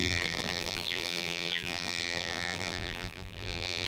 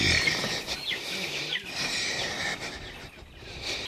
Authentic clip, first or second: second